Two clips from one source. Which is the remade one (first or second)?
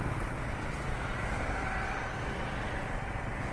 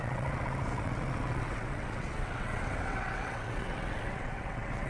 second